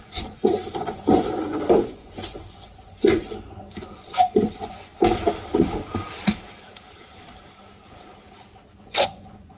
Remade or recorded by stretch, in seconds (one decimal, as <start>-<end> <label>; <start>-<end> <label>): 0.0-4.9 remade; 4.9-8.8 recorded; 8.8-9.6 remade